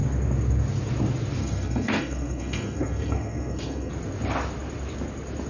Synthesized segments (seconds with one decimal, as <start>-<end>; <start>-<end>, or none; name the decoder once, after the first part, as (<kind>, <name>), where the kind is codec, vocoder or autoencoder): 1.4-3.9 (codec, SNAC)